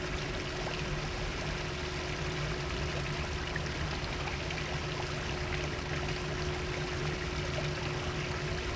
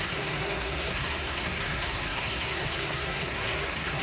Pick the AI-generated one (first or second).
second